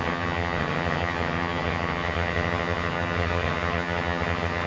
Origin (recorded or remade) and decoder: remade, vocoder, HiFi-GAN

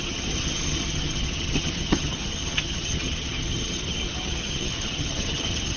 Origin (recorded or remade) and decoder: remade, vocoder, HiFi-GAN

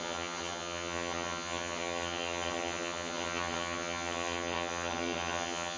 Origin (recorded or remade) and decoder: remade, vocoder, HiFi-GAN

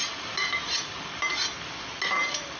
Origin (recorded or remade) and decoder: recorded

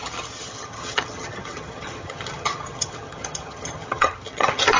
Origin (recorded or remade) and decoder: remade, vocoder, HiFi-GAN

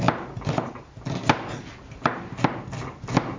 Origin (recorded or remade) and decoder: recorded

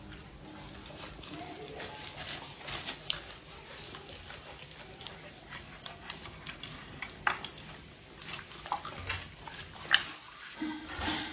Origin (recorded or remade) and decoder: recorded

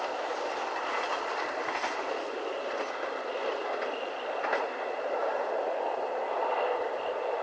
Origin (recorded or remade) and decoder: recorded